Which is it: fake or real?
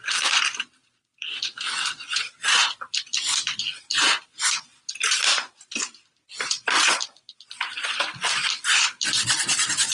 fake